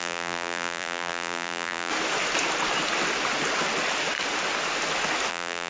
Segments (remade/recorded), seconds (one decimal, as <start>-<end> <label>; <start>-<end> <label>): 0.0-1.9 remade; 1.9-5.3 recorded; 5.3-5.7 remade